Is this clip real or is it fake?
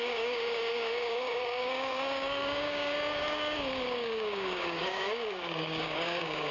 fake